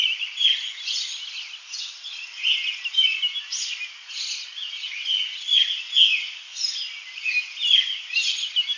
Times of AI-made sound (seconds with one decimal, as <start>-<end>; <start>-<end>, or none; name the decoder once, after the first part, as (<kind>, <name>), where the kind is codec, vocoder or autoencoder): 4.4-5.8 (vocoder, Vocos)